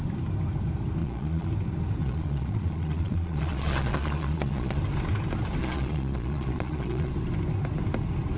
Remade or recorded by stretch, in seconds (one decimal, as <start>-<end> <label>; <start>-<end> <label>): 0.0-1.0 recorded; 1.0-1.5 remade; 1.5-2.0 recorded; 2.0-4.8 remade; 4.8-5.6 recorded; 5.6-7.1 remade; 7.1-8.4 recorded